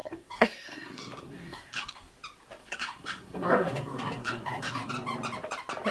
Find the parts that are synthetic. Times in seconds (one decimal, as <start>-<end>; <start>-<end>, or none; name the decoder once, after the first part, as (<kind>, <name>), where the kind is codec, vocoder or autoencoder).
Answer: 0.0-2.1 (codec, SNAC); 2.6-4.9